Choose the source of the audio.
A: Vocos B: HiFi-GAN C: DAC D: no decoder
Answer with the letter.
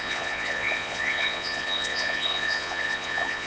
A